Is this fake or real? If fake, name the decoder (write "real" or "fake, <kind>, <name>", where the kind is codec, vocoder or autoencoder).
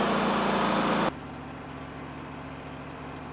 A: real